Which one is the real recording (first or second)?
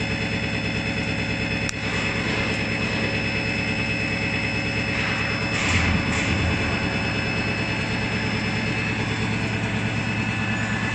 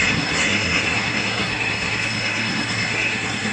first